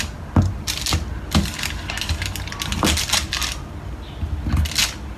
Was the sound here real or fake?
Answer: real